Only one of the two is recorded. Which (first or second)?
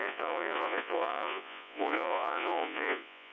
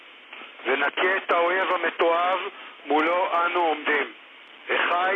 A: second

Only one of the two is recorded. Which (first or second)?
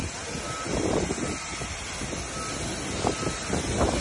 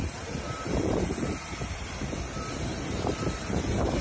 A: first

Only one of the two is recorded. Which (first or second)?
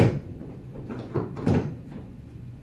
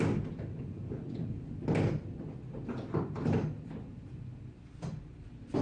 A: second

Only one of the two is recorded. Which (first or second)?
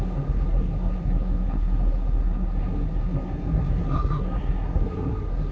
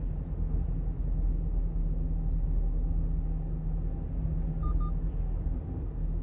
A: second